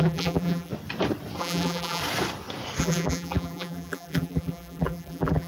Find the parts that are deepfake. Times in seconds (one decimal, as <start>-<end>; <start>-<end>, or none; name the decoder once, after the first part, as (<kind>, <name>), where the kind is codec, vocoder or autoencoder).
0.0-0.7 (vocoder, BigVGAN v2); 1.4-2.0; 2.8-5.5